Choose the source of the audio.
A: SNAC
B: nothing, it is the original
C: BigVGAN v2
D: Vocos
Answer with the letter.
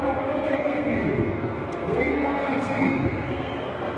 A